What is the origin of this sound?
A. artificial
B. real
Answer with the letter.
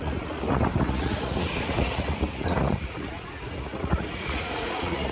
A